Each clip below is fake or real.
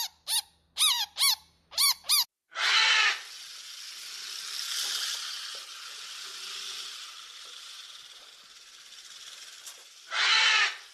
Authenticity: real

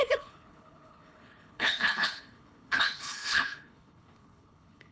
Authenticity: fake